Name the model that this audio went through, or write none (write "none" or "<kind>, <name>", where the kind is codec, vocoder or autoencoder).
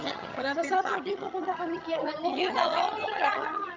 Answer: vocoder, HiFi-GAN